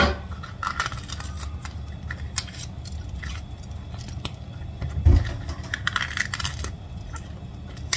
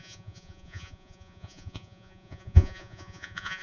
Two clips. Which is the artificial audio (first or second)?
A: second